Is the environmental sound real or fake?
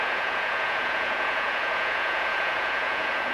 fake